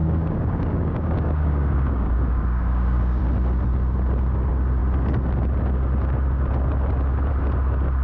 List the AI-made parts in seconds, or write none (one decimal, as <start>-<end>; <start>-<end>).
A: 0.0-3.2